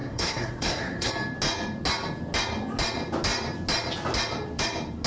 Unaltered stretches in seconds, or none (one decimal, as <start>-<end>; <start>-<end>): 1.1-5.1